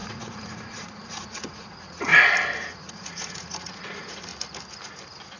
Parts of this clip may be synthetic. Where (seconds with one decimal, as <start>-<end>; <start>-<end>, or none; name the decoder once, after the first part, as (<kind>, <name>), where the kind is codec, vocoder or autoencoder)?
0.0-2.1 (vocoder, Vocos); 2.6-4.3